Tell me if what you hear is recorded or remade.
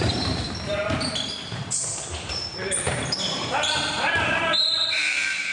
remade